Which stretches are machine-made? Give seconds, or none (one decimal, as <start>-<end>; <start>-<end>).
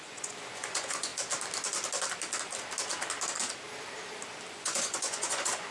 0.0-1.1; 4.5-5.7